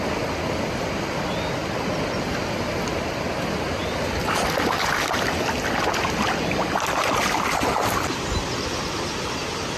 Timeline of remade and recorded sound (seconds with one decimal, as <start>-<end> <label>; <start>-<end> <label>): 0.0-9.8 recorded